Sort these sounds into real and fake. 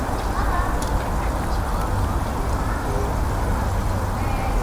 real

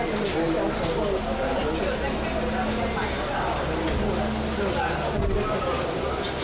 real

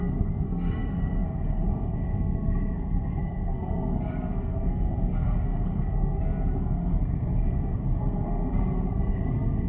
fake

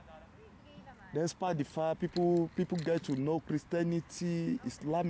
real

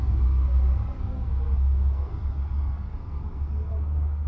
fake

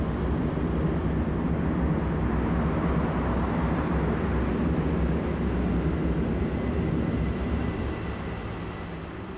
real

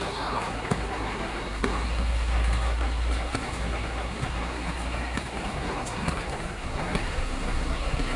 fake